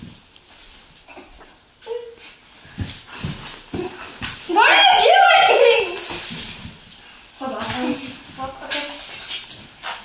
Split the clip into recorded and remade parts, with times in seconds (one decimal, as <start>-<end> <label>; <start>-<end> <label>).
0.0-10.0 recorded